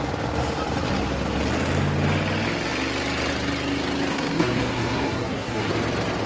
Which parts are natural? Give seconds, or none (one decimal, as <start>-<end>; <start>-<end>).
0.0-4.1; 5.7-6.3